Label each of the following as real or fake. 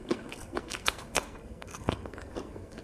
fake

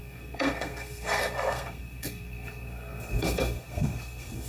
fake